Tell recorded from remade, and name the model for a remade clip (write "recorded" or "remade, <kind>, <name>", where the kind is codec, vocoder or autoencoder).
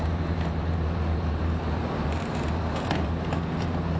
remade, vocoder, BigVGAN v2